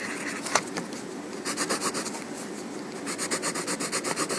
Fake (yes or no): no